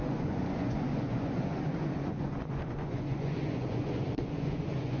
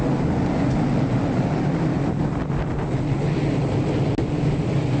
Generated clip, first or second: first